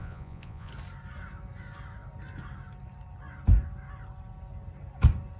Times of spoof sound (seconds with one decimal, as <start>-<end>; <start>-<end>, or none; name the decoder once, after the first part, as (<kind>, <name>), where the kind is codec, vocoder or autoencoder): 0.0-0.7 (vocoder, Vocos)